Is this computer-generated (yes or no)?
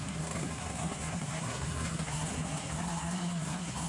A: yes